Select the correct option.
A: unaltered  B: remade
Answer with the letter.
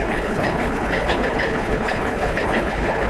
B